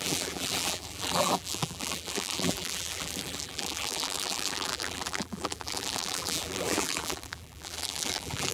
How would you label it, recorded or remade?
remade